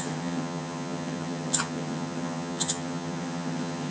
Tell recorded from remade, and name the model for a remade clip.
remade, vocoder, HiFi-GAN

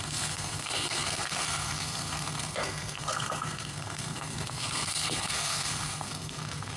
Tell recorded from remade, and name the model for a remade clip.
remade, codec, SNAC